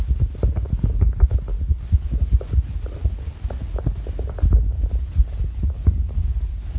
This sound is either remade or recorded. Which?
recorded